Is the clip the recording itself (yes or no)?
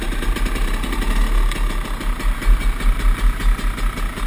yes